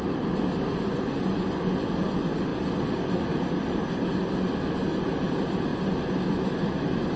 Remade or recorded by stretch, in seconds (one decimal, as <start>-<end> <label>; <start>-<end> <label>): 0.0-0.7 recorded; 0.7-1.5 remade; 1.5-7.2 recorded